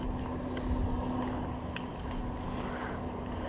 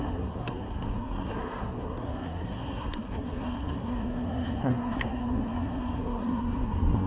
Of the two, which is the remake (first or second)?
second